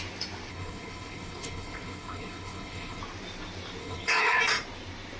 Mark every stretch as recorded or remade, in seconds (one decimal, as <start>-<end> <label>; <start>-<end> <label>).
0.0-0.5 recorded; 0.5-3.0 remade; 3.0-3.8 recorded; 3.8-4.4 remade; 4.4-5.2 recorded